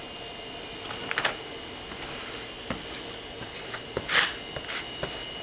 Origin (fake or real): real